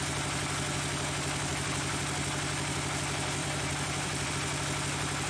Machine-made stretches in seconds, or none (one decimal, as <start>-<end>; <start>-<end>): 3.4-4.3